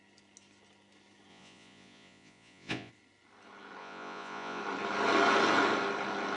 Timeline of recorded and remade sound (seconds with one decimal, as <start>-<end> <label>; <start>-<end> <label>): 0.0-1.3 recorded; 1.3-2.9 remade; 2.9-3.8 recorded; 3.8-4.6 remade; 4.6-6.4 recorded